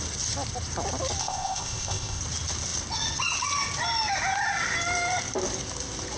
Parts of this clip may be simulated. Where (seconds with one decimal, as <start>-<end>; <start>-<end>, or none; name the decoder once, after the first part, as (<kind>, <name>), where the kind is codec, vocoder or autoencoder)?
1.2-2.2 (codec, ZipCodec)